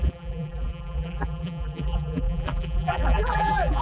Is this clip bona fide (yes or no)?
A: no